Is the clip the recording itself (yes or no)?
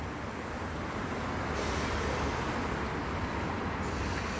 yes